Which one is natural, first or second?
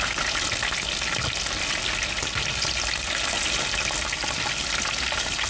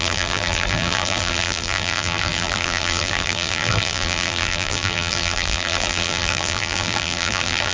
first